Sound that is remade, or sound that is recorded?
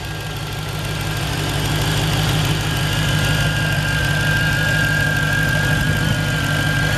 recorded